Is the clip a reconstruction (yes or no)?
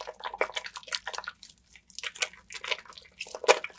no